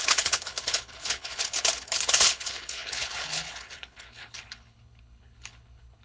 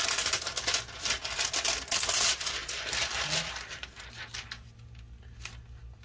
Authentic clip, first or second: second